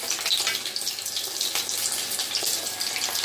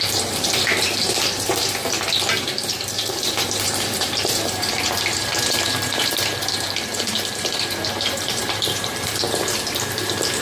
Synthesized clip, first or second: second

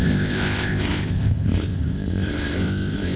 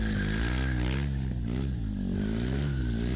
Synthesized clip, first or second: first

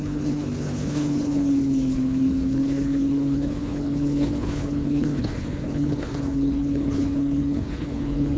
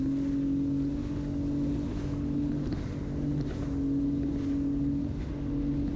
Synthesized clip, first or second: first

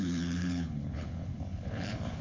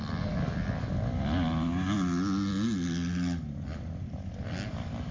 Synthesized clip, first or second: first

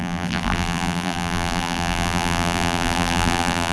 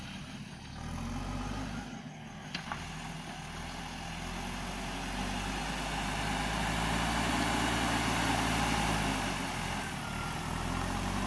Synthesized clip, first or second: first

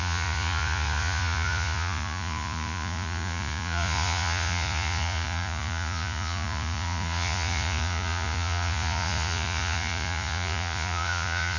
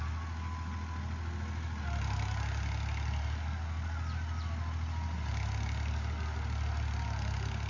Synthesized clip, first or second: first